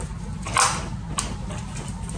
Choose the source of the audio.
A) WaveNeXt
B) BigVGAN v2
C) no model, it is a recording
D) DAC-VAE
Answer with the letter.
C